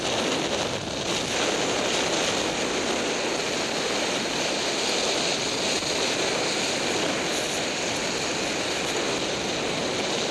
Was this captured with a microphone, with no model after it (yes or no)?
yes